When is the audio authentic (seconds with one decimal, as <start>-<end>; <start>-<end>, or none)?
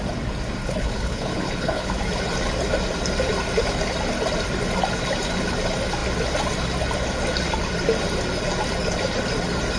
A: 0.0-0.6; 1.9-9.8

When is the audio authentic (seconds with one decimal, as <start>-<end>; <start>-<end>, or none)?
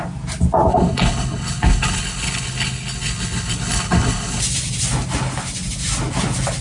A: 0.0-0.7; 4.4-6.6